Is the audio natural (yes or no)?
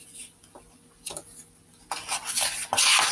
yes